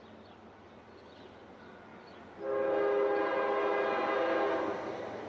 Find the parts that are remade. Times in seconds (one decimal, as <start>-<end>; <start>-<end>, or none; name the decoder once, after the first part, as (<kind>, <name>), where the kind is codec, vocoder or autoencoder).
none